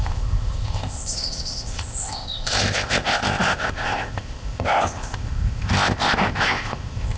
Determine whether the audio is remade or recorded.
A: remade